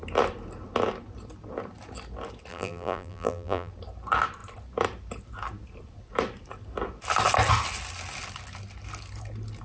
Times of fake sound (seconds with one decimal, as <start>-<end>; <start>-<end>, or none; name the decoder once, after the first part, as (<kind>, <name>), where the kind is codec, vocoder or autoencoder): 2.5-3.7 (vocoder, BigVGAN v2)